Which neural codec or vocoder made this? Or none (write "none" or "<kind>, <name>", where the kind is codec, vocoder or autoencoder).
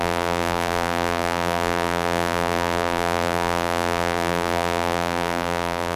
vocoder, BigVGAN v2